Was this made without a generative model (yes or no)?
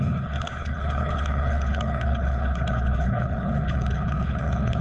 no